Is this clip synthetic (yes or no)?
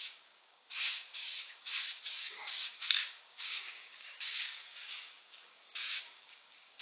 yes